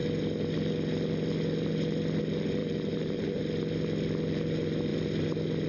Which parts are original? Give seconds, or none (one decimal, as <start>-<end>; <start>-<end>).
0.0-2.6; 3.4-5.7

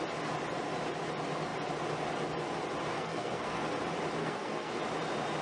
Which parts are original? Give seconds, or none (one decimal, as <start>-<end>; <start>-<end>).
0.0-2.9; 3.6-4.2; 4.7-5.4

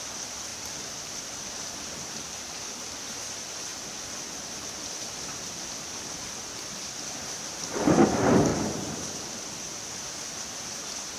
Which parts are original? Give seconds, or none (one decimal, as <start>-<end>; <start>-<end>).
0.0-0.5; 3.0-3.7; 8.1-11.2

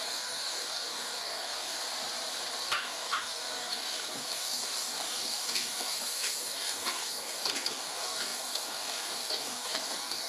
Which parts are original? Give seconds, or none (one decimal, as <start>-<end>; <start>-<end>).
1.8-2.6

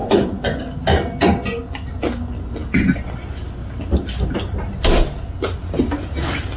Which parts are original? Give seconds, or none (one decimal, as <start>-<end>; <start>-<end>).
0.6-6.6

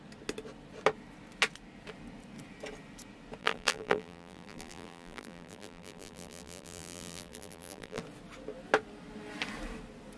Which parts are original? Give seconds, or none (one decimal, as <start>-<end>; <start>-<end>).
0.0-3.4; 8.0-10.2